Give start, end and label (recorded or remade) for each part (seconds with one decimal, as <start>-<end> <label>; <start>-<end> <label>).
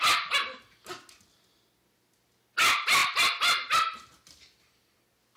0.0-5.4 recorded